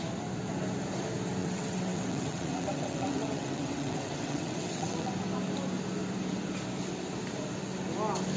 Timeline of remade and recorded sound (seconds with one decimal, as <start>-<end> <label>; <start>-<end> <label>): 0.0-1.4 recorded; 1.4-5.1 remade; 5.1-8.4 recorded